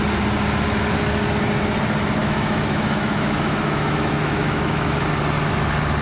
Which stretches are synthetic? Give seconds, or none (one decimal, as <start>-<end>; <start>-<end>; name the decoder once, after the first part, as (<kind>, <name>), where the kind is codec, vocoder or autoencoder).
2.2-5.0 (autoencoder, DAC-VAE)